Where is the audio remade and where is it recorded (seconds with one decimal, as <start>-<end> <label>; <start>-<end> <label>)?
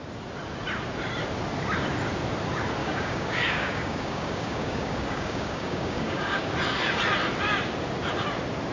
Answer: 0.0-2.8 recorded; 2.8-6.5 remade; 6.5-8.7 recorded